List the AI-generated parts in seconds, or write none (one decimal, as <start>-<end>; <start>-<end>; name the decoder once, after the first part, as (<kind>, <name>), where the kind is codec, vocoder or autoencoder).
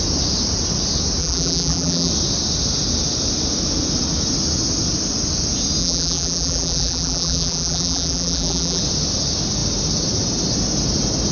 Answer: 1.2-2.1 (vocoder, BigVGAN v2); 5.8-8.8